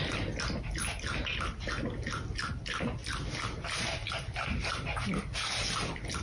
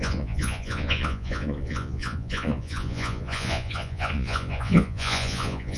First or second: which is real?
first